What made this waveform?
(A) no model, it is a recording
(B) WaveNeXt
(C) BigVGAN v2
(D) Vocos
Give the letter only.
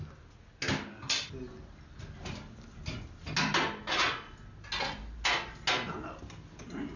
A